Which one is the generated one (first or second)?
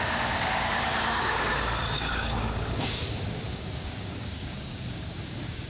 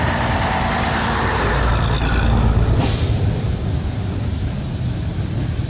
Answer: first